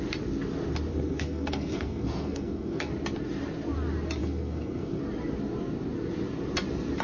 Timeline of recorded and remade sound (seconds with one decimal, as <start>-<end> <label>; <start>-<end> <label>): 0.0-0.9 recorded; 0.9-2.9 remade; 2.9-4.2 recorded; 4.2-5.0 remade; 5.0-7.0 recorded